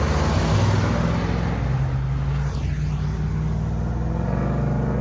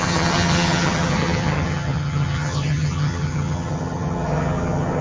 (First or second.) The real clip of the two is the first